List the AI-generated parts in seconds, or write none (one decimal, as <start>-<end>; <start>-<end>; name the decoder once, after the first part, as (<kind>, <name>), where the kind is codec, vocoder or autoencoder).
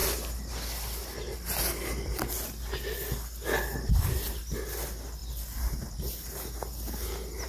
none